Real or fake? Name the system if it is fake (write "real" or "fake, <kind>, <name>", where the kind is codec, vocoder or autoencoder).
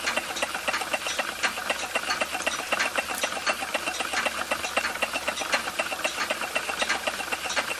real